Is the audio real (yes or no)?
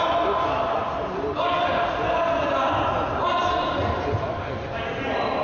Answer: yes